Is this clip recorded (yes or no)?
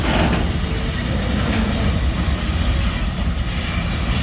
yes